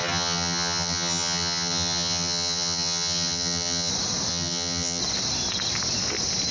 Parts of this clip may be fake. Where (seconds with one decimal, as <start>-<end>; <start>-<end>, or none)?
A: 0.0-3.9; 4.3-5.0